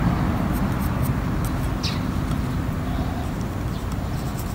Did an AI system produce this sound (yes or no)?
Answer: no